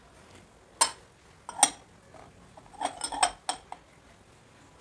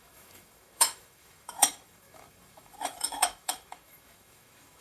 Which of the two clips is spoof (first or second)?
second